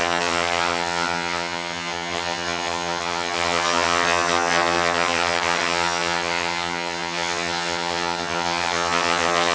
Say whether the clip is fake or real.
fake